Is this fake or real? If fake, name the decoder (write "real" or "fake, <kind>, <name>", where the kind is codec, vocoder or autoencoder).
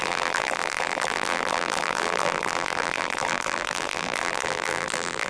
fake, vocoder, BigVGAN v2